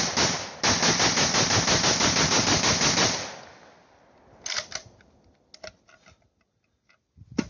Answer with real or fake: real